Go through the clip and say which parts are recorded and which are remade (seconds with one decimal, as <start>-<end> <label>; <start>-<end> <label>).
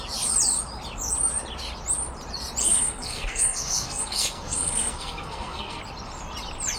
0.0-2.6 recorded; 2.6-5.8 remade; 5.8-6.8 recorded